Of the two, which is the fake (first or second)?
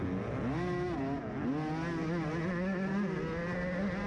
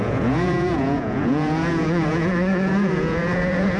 second